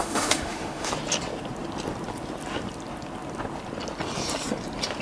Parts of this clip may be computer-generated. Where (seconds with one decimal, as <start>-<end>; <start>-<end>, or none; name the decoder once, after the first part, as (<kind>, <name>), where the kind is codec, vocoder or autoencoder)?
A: 0.0-0.9 (autoencoder, DAC-VAE)